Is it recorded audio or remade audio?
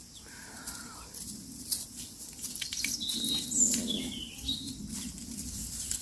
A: recorded